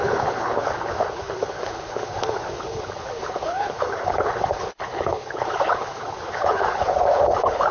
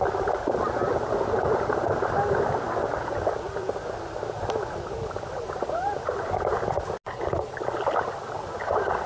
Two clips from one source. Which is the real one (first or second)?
second